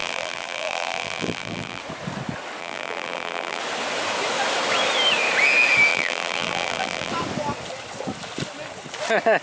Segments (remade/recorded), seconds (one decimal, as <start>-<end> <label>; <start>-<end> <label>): 0.0-1.8 remade; 1.8-2.6 recorded; 2.6-3.6 remade; 3.6-5.9 recorded; 5.9-7.1 remade; 7.1-9.4 recorded